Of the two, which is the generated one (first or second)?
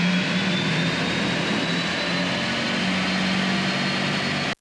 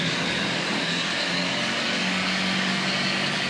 second